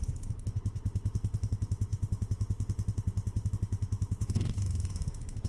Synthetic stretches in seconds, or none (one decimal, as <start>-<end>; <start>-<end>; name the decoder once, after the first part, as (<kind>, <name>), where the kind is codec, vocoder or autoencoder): 0.0-5.5 (autoencoder, DAC-VAE)